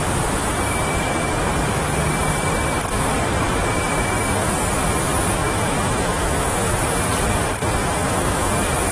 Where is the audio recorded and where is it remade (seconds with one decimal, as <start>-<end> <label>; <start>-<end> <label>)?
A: 0.0-5.4 recorded; 5.4-6.8 remade; 6.8-7.8 recorded; 7.8-8.5 remade; 8.5-8.9 recorded